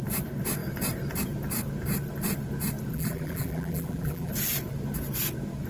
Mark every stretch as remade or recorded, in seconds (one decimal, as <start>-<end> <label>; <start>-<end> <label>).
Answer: 0.0-2.9 recorded; 2.9-4.3 remade; 4.3-5.7 recorded

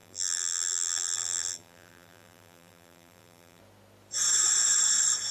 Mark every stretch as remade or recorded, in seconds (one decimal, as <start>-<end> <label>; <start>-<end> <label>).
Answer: 0.0-3.6 remade; 3.6-5.3 recorded

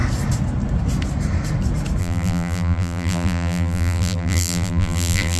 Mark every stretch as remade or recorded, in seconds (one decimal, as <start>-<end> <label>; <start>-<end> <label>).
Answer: 0.0-2.0 recorded; 2.0-5.4 remade

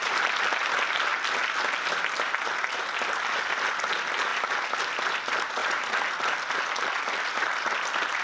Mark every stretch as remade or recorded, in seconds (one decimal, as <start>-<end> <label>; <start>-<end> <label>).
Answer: 0.0-1.1 remade; 1.1-3.7 recorded; 3.7-8.2 remade

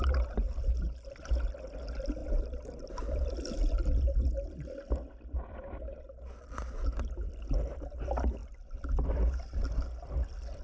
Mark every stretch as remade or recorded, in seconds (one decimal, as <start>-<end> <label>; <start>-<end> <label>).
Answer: 0.0-10.6 recorded